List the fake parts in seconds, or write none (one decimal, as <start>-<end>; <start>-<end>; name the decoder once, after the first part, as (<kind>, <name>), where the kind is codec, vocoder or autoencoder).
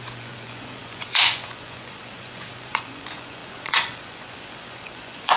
0.0-5.4 (vocoder, Vocos)